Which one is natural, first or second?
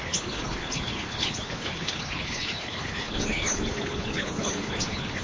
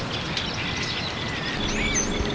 second